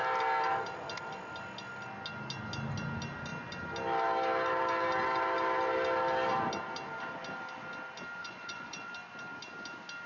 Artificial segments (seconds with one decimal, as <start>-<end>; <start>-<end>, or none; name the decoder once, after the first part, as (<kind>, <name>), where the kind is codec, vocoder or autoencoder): 8.2-8.9 (vocoder, Vocos)